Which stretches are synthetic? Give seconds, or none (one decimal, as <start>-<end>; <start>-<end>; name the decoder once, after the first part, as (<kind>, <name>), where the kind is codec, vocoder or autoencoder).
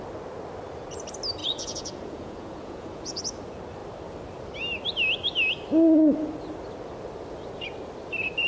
1.4-3.2 (vocoder, Vocos)